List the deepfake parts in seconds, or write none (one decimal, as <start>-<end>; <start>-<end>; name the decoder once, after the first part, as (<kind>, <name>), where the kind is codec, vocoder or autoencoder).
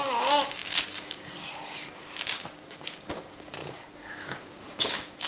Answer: 0.0-5.3 (codec, DAC)